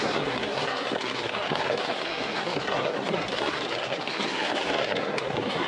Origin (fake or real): fake